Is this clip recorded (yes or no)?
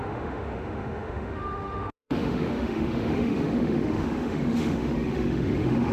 no